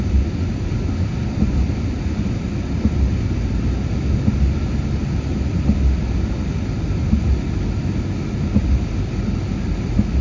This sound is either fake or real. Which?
real